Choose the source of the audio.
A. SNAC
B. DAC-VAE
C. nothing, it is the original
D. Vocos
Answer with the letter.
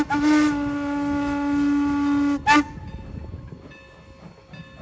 C